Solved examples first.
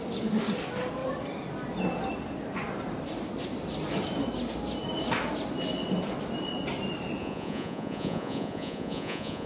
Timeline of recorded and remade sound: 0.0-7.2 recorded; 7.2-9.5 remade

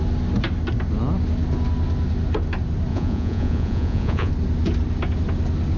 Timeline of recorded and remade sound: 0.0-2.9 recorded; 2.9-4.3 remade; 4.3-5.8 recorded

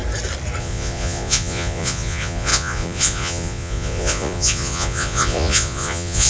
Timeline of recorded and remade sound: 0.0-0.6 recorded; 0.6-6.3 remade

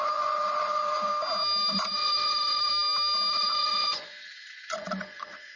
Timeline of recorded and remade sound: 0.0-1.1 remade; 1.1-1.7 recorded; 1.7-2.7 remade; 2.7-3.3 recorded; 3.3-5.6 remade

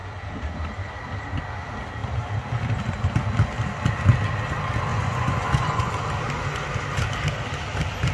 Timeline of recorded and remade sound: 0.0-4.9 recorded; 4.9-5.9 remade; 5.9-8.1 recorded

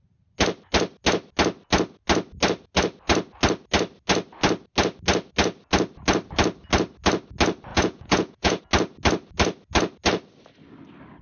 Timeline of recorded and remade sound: 0.0-7.7 recorded; 7.7-8.6 remade; 8.6-11.2 recorded